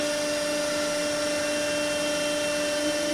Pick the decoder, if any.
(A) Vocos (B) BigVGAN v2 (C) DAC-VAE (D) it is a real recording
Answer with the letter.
D